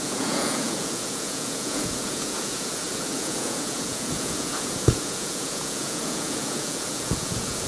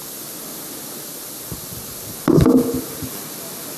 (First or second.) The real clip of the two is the second